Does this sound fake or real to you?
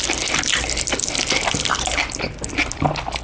real